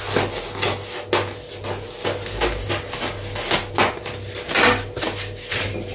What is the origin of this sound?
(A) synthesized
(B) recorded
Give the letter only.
B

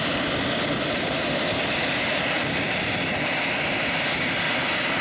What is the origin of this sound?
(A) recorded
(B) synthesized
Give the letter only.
A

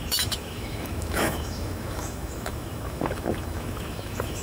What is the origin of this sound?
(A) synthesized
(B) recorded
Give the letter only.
A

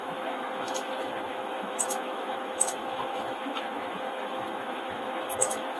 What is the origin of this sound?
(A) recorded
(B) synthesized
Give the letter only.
B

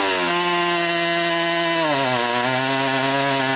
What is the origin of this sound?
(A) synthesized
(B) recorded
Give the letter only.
B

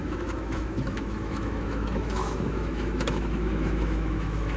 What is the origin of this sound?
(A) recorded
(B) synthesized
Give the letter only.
B